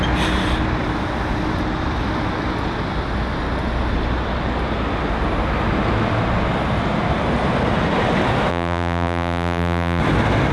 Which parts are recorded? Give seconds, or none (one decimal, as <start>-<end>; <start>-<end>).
0.0-8.5; 10.0-10.5